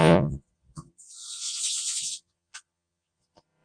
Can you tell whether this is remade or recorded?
remade